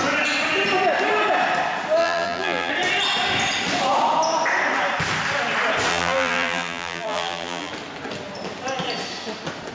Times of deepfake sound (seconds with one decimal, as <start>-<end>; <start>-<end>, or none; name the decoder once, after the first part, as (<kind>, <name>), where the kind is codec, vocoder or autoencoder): 2.0-2.7 (vocoder, BigVGAN v2); 5.9-7.7